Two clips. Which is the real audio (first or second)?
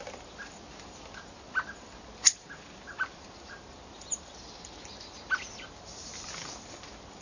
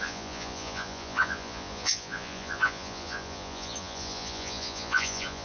first